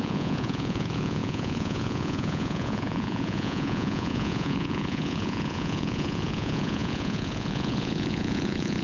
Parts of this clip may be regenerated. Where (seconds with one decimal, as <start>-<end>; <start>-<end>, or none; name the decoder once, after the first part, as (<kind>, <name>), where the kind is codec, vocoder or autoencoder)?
0.0-8.8 (vocoder, Vocos)